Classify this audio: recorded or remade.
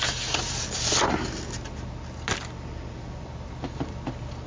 recorded